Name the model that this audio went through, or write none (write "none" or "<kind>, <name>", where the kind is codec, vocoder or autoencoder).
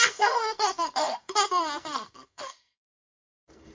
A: codec, SNAC